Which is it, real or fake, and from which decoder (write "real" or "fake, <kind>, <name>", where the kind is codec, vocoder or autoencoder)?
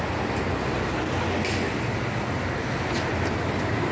real